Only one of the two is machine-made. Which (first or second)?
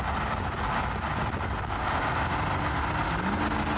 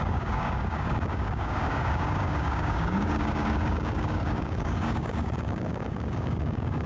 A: second